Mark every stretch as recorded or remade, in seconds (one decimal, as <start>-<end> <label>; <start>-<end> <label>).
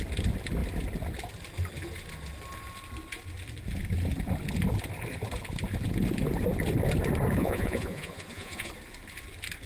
0.0-7.4 recorded; 7.4-8.7 remade; 8.7-9.7 recorded